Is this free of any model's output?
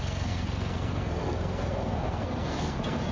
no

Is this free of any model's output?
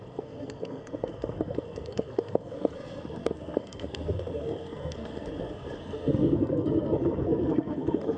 no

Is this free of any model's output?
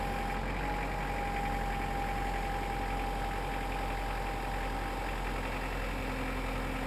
yes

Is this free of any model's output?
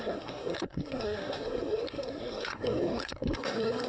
no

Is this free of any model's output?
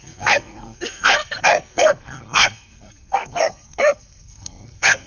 no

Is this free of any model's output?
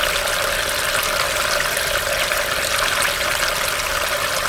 yes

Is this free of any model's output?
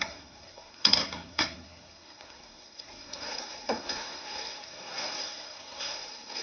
no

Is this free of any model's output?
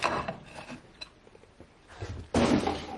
yes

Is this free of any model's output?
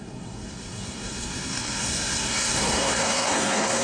no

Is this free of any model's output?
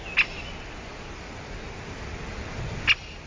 yes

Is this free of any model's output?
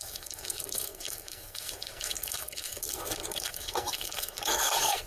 no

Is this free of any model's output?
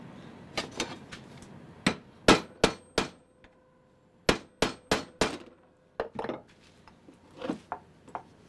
yes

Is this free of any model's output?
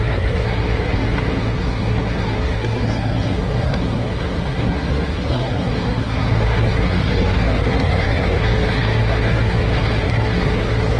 no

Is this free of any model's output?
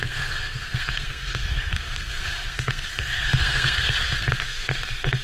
no